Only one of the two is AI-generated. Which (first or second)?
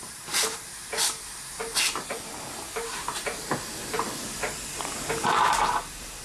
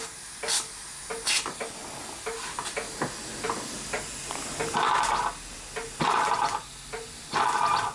first